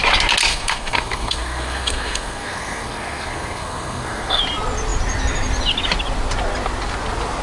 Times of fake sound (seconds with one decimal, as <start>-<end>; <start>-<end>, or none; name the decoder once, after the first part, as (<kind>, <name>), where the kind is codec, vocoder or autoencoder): 0.5-4.4 (codec, SNAC)